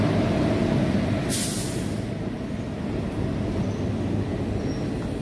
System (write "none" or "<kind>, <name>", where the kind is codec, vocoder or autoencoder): none